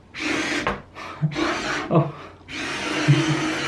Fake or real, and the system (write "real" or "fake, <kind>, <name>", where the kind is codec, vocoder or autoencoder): real